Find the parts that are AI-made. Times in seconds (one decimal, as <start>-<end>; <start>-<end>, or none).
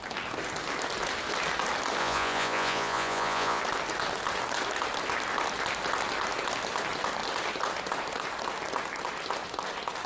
2.0-3.6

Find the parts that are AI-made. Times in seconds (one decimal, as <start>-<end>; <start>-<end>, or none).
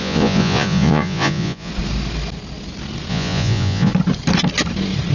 0.0-1.7; 3.1-3.9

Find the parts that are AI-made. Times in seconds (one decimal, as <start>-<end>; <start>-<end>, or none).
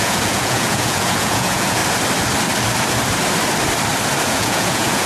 0.0-1.8; 4.3-5.1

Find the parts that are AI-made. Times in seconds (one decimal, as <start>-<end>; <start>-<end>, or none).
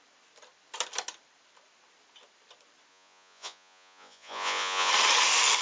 2.9-4.9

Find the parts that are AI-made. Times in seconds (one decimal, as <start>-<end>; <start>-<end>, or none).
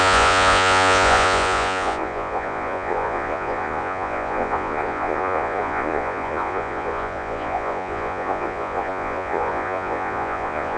0.0-10.8